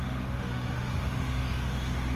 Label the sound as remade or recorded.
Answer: remade